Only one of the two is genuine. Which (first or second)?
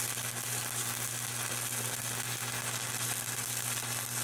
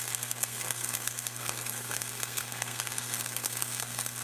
first